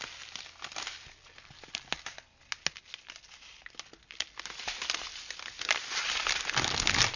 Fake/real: real